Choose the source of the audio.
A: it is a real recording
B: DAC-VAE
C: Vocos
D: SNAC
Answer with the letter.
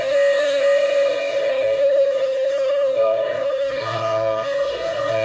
D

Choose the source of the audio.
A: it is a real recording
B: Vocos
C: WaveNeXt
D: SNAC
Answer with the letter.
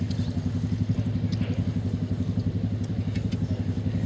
A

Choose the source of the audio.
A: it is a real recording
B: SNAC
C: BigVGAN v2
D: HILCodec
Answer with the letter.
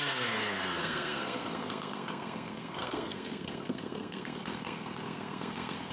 B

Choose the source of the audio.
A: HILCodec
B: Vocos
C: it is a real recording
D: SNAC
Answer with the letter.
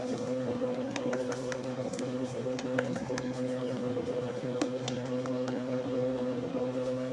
D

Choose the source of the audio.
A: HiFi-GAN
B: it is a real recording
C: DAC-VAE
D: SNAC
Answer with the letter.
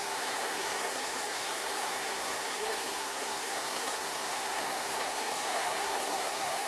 D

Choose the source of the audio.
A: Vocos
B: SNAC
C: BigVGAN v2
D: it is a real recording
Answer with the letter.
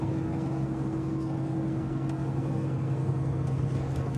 B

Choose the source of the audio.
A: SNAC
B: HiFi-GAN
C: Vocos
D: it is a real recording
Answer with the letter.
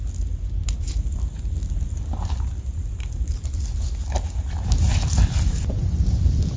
D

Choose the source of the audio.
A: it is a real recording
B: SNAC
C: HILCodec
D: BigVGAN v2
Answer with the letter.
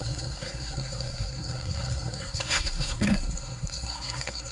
B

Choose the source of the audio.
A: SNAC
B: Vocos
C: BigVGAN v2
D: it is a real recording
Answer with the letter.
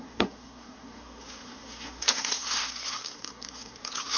A